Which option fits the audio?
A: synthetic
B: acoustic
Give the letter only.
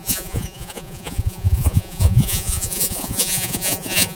A